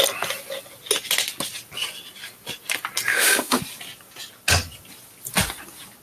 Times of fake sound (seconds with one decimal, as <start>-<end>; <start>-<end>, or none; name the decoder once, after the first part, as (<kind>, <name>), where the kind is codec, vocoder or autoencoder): 3.1-3.6 (autoencoder, DAC-VAE)